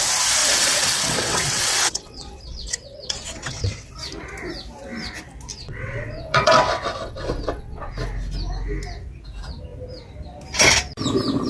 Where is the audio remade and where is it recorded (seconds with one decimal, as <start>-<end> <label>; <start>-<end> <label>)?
0.0-0.4 recorded; 0.4-3.9 remade; 3.9-5.5 recorded; 5.5-7.9 remade; 7.9-11.5 recorded